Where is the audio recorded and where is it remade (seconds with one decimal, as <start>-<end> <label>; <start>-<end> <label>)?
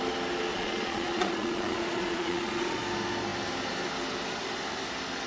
0.0-0.5 recorded; 0.5-2.8 remade; 2.8-5.3 recorded